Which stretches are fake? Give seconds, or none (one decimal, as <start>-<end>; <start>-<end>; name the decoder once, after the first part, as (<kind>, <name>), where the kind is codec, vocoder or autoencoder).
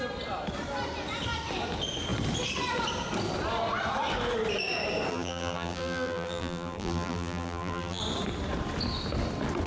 5.1-8.0 (vocoder, BigVGAN v2)